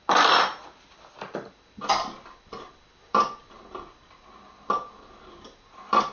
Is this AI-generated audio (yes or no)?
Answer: no